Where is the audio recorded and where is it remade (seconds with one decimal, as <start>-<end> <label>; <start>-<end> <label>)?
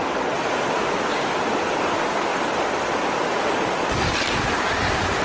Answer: 0.0-5.2 recorded